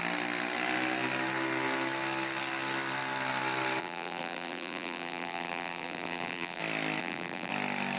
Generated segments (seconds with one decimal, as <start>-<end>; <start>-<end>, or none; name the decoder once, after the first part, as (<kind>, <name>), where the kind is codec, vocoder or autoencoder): 3.8-6.6 (vocoder, BigVGAN v2); 7.0-7.5